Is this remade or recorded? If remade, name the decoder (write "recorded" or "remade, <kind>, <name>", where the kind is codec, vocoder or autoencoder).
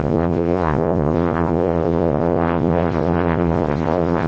remade, vocoder, Vocos